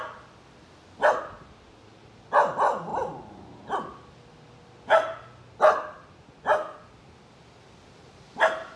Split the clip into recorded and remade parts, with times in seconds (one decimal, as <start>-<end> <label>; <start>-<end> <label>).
0.0-8.8 recorded